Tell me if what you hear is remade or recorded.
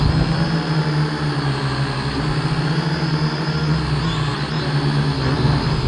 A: recorded